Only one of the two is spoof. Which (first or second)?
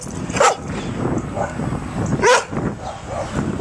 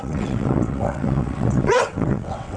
second